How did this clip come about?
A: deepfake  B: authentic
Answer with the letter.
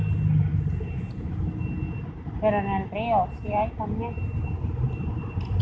B